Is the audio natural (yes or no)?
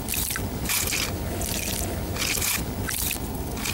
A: yes